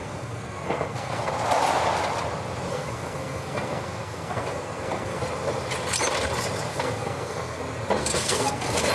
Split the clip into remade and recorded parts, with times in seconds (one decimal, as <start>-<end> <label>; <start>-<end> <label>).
0.0-1.3 remade; 1.3-2.7 recorded; 2.7-5.2 remade; 5.2-6.7 recorded; 6.7-7.6 remade; 7.6-8.0 recorded; 8.0-8.9 remade